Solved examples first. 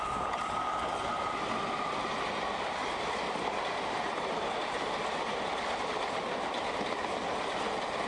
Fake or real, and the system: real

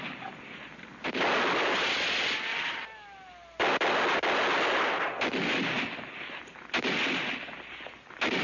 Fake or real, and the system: real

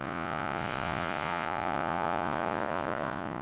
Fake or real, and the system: fake, vocoder, Vocos